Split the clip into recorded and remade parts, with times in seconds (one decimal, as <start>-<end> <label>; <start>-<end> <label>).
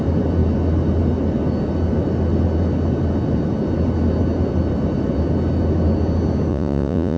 0.0-6.5 recorded; 6.5-7.2 remade